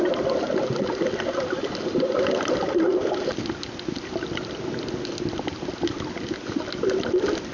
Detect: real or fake real